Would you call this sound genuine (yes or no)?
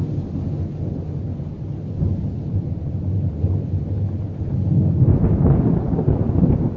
yes